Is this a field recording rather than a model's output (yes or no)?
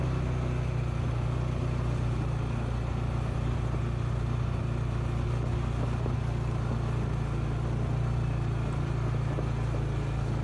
yes